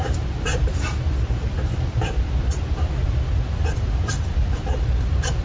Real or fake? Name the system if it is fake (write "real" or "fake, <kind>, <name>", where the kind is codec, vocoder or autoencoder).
real